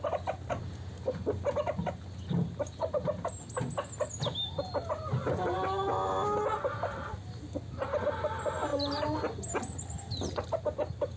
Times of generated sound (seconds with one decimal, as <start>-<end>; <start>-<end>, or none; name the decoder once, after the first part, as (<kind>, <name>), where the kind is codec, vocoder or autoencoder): none